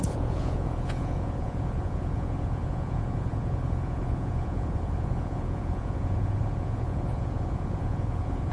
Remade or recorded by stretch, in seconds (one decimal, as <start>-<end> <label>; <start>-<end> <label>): 0.0-8.5 remade